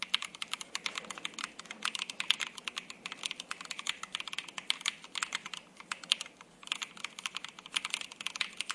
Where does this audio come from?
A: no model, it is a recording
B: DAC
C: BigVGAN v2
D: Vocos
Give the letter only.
A